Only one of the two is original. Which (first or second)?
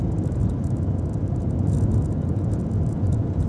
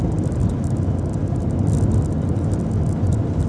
second